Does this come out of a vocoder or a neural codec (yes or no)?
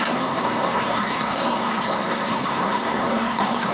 yes